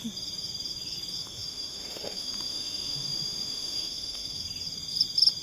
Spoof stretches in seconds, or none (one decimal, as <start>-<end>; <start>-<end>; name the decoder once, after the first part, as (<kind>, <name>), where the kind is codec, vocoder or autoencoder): 1.2-4.4 (autoencoder, DAC-VAE)

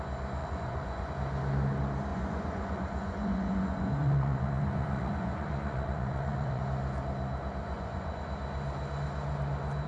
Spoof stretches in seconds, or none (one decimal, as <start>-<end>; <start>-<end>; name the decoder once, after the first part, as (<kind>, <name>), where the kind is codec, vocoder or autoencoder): 0.4-1.1 (vocoder, Vocos); 2.1-6.6; 7.6-8.2